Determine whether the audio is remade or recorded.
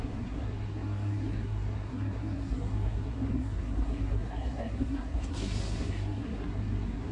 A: remade